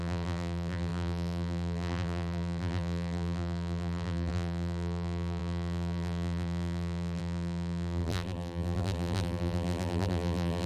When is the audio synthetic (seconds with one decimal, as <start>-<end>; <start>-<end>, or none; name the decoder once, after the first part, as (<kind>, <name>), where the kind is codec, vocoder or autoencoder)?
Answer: 0.0-10.7 (vocoder, BigVGAN v2)